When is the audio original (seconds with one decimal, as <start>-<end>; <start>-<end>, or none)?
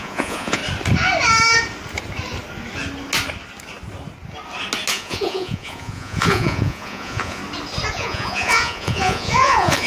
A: 0.6-4.9; 7.4-7.9